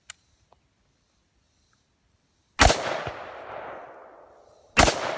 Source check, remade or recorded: recorded